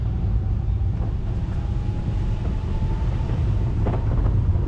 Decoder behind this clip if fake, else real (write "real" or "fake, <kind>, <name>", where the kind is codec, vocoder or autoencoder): real